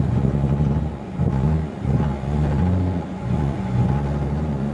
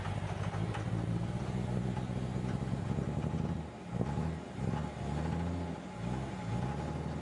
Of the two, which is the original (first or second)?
second